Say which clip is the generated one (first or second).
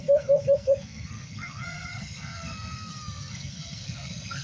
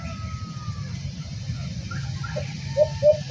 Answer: first